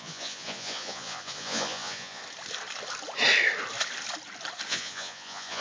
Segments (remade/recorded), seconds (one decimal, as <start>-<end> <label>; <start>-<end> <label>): 0.0-2.2 remade; 2.2-4.7 recorded; 4.7-5.6 remade